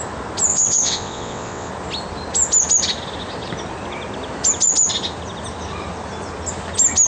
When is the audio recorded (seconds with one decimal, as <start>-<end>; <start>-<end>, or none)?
0.0-0.5; 1.7-7.1